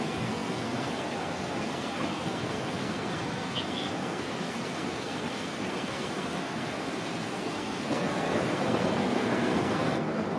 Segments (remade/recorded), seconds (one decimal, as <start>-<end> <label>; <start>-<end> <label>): 0.0-10.4 remade